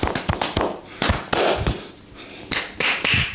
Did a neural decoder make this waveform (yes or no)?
no